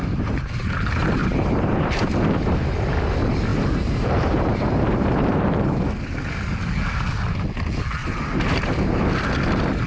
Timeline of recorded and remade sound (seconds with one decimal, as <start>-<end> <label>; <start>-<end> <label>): 0.0-0.7 remade; 0.7-1.2 recorded; 1.2-1.7 remade; 1.7-3.5 recorded; 3.5-5.9 remade; 5.9-8.0 recorded; 8.0-9.0 remade; 9.0-9.9 recorded